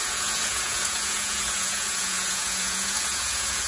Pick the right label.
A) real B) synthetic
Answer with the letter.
B